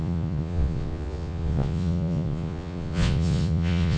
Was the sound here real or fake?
fake